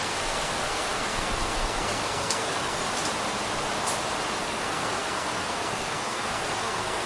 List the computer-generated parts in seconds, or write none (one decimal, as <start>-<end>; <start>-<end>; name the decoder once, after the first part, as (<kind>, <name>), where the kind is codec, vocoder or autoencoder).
0.0-2.8 (codec, SNAC); 4.4-7.1

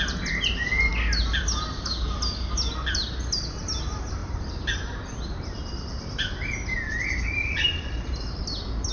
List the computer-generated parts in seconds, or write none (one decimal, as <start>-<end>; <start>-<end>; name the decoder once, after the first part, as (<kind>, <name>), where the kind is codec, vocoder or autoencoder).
4.2-6.3 (vocoder, BigVGAN v2); 7.4-8.4

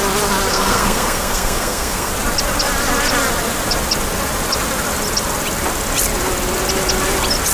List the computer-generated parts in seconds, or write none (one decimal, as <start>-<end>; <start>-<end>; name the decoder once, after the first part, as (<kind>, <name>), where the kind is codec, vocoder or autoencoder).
0.5-2.1 (codec, SNAC)

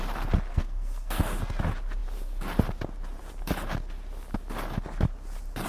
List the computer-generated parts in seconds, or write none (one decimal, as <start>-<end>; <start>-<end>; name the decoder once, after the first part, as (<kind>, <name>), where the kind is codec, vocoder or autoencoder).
0.5-1.3 (codec, SNAC)

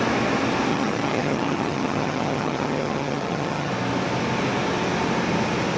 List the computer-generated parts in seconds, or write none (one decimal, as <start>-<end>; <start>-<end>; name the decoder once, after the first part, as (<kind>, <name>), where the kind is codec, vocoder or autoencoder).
0.7-3.7 (vocoder, HiFi-GAN)